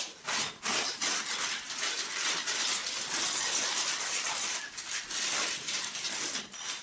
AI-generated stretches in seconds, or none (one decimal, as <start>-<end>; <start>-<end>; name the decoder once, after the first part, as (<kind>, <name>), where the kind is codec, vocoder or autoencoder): none